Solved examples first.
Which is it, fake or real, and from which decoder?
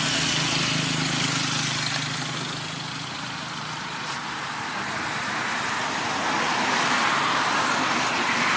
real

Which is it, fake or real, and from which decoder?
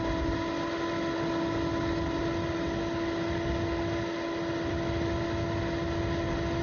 real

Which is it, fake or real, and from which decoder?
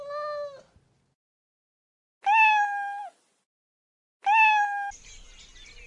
real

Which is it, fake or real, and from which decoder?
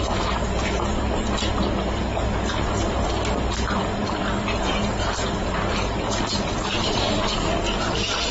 fake, vocoder, BigVGAN v2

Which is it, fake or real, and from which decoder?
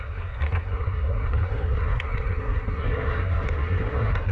fake, codec, SNAC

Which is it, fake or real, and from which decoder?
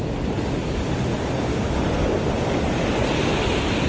real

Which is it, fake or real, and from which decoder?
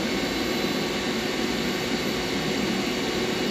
real